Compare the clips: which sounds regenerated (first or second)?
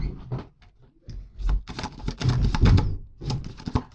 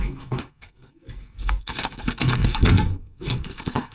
second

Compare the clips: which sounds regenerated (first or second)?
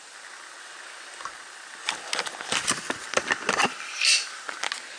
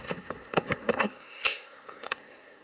second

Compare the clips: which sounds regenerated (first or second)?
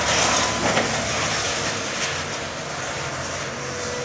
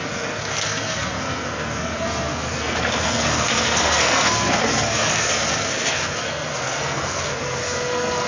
second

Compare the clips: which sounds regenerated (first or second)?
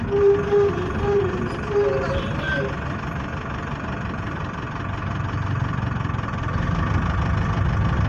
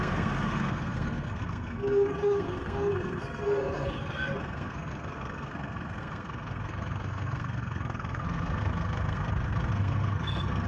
second